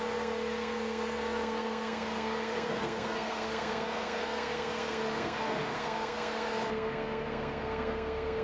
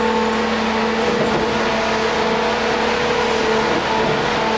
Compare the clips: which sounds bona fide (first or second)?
second